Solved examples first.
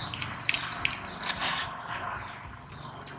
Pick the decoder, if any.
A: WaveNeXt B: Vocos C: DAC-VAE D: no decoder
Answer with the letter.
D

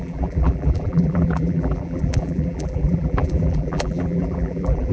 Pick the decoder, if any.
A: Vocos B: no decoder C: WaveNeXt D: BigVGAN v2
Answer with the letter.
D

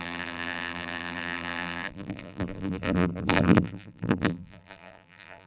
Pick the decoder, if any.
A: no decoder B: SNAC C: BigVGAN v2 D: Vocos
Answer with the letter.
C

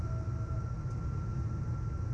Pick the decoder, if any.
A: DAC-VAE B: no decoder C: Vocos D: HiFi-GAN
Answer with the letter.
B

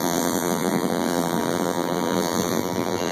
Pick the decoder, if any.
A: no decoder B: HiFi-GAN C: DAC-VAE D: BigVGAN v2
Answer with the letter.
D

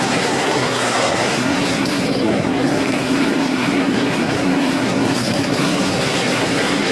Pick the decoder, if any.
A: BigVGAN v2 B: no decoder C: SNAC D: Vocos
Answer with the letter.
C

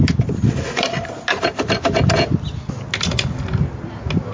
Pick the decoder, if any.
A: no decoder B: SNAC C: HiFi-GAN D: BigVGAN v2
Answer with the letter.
A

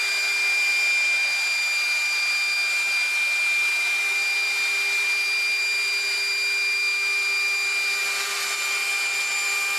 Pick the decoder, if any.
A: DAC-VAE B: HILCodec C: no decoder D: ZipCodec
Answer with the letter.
C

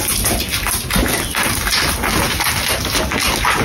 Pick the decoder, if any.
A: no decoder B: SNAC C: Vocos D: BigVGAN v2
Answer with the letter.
A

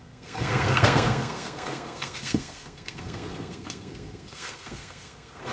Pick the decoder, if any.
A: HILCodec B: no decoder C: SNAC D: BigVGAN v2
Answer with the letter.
C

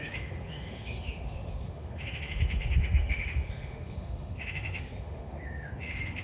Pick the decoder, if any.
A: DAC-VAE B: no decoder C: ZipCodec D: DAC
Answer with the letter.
A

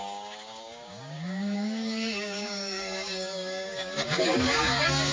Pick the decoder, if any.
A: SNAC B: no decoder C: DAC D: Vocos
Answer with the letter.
C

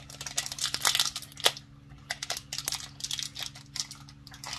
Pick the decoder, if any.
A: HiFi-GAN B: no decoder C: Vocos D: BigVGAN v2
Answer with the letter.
B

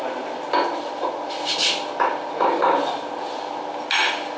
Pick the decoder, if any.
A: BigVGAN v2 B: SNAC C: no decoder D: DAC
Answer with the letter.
C